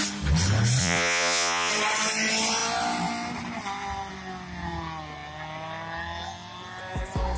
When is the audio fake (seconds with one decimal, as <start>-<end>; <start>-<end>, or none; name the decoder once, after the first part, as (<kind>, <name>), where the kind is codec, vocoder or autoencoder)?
0.8-1.7 (vocoder, Vocos)